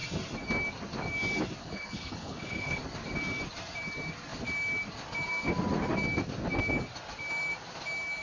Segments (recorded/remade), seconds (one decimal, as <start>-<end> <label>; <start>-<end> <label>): 0.0-1.6 recorded; 1.6-2.8 remade; 2.8-8.2 recorded